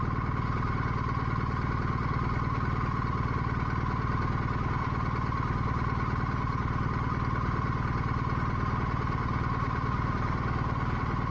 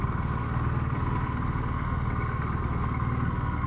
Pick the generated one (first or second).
second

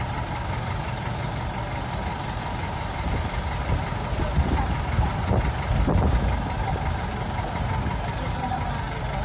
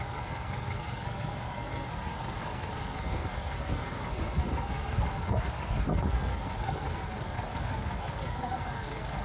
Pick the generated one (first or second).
second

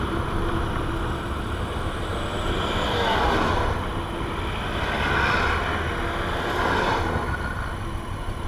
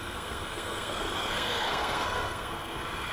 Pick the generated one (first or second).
second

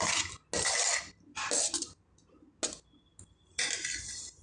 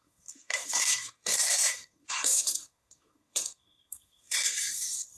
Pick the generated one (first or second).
second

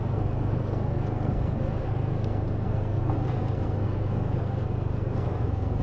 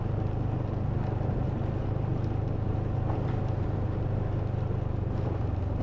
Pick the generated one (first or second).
first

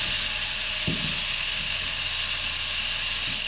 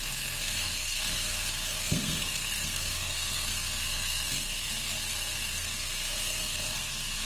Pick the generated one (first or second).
second